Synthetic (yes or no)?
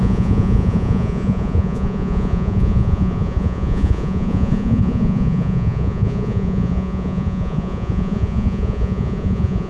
yes